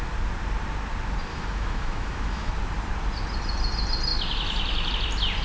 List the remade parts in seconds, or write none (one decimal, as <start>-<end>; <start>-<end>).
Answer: 1.3-2.5